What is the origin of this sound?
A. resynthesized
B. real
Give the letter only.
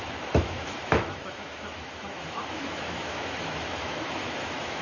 A